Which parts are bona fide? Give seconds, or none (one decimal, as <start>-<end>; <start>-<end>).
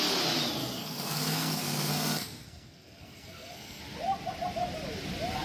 0.0-0.6; 3.8-5.4